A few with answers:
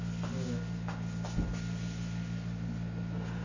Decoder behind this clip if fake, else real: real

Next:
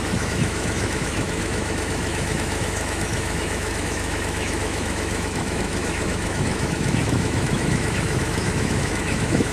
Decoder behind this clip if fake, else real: fake, autoencoder, DAC-VAE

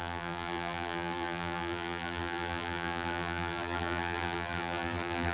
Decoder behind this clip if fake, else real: fake, vocoder, BigVGAN v2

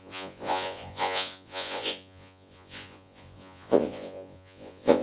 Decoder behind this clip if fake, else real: fake, vocoder, Vocos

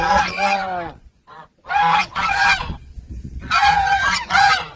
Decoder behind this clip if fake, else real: fake, vocoder, Vocos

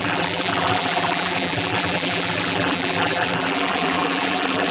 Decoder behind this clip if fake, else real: fake, vocoder, BigVGAN v2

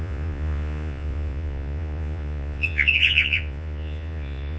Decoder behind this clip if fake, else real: fake, vocoder, Vocos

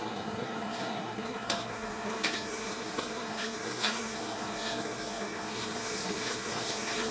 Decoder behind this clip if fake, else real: fake, codec, SNAC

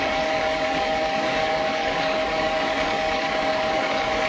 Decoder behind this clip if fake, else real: fake, codec, DAC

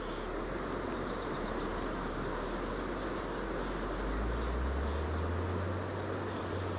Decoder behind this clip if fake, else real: real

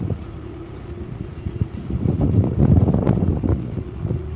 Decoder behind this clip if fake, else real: fake, vocoder, Vocos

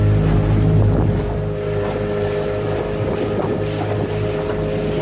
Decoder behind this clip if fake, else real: real